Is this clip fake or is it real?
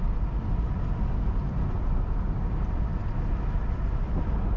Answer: real